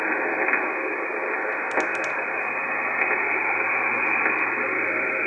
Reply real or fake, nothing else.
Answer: real